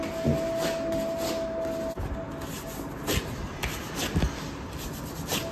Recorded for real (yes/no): yes